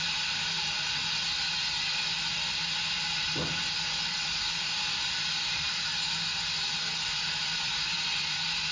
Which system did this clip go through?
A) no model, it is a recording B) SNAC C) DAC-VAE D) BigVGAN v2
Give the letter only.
A